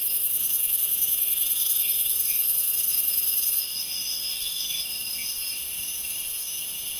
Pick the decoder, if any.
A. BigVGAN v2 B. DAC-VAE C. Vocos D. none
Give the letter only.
B